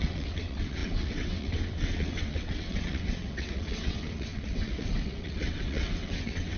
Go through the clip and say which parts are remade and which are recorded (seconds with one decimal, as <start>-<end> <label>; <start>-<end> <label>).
0.0-6.6 remade